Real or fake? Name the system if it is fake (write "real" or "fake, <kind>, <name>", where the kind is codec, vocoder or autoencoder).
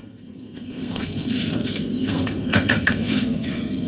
fake, codec, SNAC